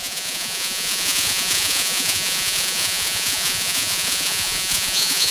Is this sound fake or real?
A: fake